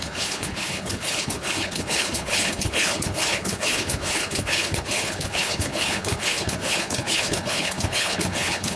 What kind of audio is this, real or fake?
fake